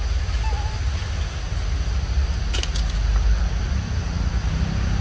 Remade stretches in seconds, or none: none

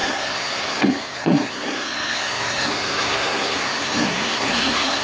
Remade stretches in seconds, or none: 0.0-5.0 (codec, SNAC)

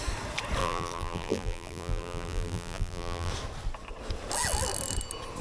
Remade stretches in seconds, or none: 0.6-3.3 (vocoder, BigVGAN v2)